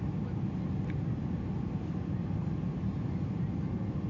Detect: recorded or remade recorded